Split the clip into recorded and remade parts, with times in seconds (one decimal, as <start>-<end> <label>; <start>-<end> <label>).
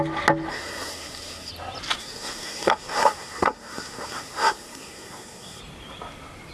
0.0-0.5 recorded; 0.5-1.5 remade; 1.5-2.0 recorded; 2.0-5.6 remade; 5.6-6.5 recorded